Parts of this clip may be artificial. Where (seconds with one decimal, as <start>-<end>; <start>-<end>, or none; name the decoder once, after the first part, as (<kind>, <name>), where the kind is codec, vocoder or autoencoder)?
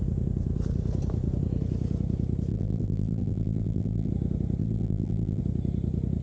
2.5-4.1 (vocoder, BigVGAN v2); 4.6-5.4